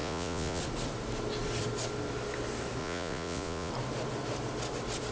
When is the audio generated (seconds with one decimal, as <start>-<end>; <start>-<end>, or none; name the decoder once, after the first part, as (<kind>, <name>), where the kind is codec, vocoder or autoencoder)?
0.0-0.6 (vocoder, Vocos); 2.8-3.7